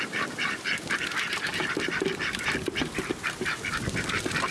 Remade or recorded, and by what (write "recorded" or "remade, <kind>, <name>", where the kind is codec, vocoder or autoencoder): remade, vocoder, BigVGAN v2